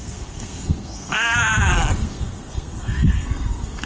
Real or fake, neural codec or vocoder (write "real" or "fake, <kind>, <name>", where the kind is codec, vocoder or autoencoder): fake, codec, SNAC